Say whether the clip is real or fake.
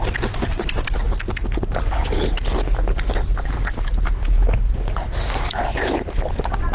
real